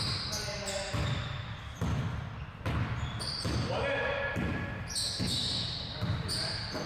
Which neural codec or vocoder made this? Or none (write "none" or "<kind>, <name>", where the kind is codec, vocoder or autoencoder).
none